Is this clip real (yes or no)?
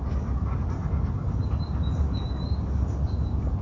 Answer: yes